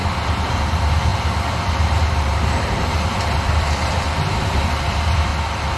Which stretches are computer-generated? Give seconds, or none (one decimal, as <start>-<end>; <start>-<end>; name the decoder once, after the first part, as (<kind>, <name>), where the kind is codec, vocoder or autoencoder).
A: 0.5-5.3 (vocoder, BigVGAN v2)